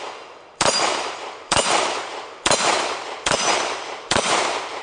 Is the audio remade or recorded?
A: remade